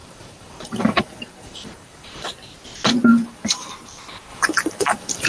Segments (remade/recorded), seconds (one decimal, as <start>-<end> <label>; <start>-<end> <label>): 0.0-2.2 remade; 2.2-3.1 recorded; 3.1-3.7 remade; 3.7-4.3 recorded; 4.3-5.3 remade